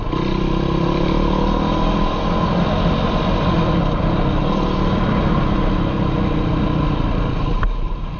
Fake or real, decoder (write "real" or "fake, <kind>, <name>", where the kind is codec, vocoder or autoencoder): real